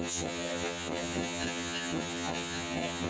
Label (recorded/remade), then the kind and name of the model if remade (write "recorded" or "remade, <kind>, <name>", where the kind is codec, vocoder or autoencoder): remade, vocoder, HiFi-GAN